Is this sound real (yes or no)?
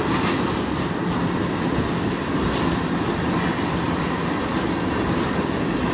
yes